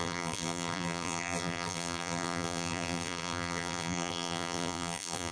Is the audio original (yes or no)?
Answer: no